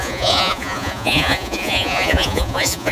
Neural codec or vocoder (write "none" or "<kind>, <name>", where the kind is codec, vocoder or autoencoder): vocoder, Vocos